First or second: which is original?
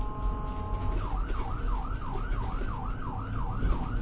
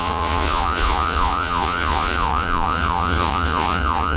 first